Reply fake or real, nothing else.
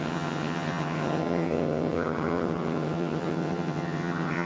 fake